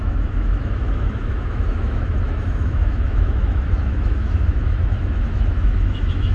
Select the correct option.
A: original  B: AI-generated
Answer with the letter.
B